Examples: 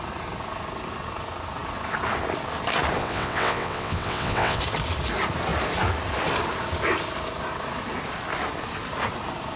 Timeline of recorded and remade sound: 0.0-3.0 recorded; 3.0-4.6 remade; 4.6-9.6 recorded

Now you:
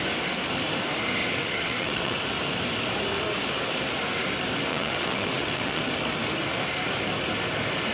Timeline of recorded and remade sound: 0.0-1.2 recorded; 1.2-2.2 remade; 2.2-4.7 recorded; 4.7-5.8 remade; 5.8-7.9 recorded

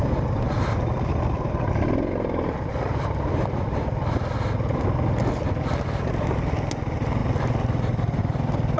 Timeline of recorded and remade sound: 0.0-8.8 recorded